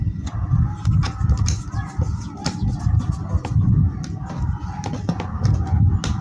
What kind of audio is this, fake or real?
real